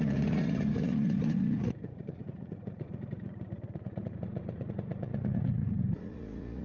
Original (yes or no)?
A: no